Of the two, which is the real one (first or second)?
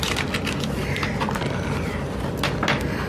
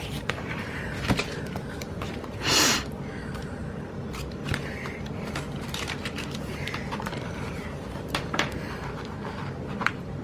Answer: first